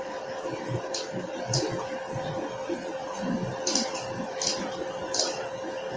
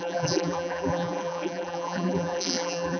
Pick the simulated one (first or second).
second